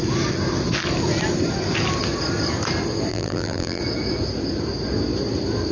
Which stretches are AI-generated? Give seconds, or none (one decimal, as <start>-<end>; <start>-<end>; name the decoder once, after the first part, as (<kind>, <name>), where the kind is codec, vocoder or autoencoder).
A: 3.1-3.8 (vocoder, BigVGAN v2)